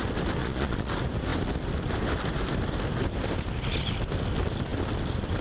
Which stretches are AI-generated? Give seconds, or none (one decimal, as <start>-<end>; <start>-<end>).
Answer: 0.4-0.9